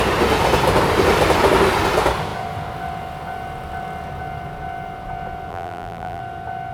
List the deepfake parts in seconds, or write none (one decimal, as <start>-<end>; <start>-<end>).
5.5-6.2